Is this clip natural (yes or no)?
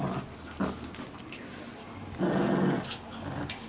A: yes